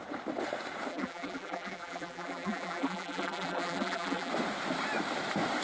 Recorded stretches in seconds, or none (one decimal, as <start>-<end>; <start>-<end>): 0.0-0.9; 4.3-5.6